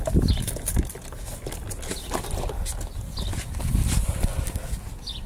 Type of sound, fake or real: real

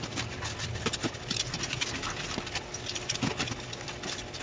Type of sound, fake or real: real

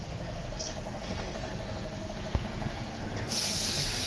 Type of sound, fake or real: fake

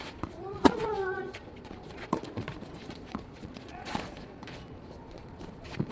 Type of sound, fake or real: fake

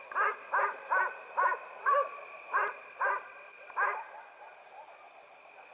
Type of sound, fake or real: real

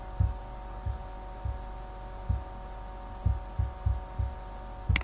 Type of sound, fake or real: real